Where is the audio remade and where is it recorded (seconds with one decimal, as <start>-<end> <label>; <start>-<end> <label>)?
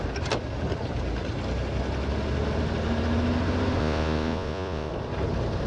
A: 0.0-3.8 recorded; 3.8-4.9 remade; 4.9-5.7 recorded